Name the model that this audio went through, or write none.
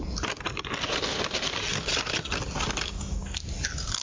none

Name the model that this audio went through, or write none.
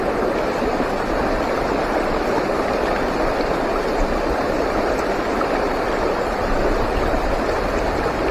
vocoder, BigVGAN v2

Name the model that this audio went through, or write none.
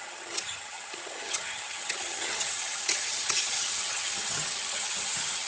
vocoder, HiFi-GAN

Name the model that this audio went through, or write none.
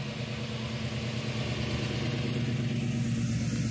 none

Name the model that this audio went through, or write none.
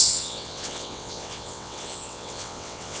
vocoder, WaveNeXt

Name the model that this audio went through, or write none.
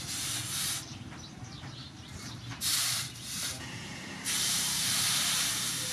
vocoder, BigVGAN v2